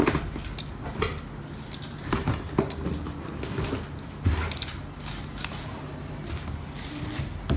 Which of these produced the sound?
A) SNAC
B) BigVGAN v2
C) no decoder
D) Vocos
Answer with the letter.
C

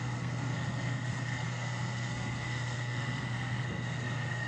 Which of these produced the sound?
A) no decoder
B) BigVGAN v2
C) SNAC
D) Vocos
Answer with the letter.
C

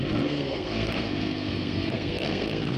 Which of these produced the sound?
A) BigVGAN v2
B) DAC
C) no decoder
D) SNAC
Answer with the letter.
D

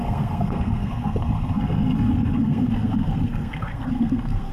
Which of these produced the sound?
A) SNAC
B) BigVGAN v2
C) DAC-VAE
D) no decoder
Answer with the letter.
A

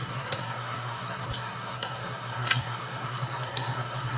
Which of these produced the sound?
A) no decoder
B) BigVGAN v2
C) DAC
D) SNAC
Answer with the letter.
D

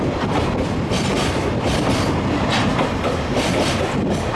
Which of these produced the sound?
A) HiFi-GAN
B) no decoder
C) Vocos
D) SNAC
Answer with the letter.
B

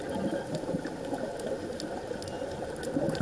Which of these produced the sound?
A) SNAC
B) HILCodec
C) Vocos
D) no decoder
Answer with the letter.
D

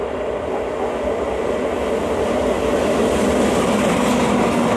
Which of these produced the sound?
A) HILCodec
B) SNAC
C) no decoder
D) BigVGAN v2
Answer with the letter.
C